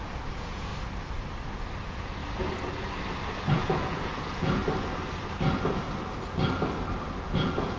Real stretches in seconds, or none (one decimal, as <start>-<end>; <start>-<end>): 0.7-1.8; 2.2-3.5; 4.6-7.2